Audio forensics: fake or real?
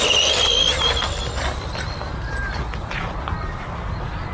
real